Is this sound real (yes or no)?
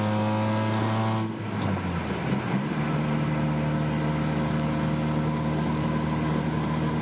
yes